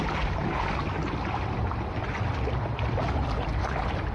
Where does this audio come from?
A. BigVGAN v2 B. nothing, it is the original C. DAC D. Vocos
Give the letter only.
B